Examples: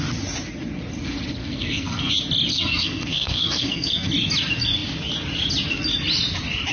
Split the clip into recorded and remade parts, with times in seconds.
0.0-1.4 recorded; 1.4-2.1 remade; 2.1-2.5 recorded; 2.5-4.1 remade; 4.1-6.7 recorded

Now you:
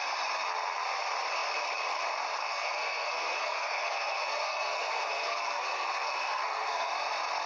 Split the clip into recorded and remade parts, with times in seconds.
0.0-2.4 recorded; 2.4-6.9 remade; 6.9-7.5 recorded